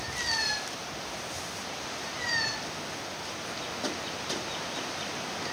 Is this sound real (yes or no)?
yes